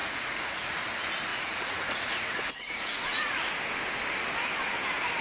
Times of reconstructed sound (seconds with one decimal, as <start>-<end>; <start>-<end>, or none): 0.0-0.8; 1.3-3.6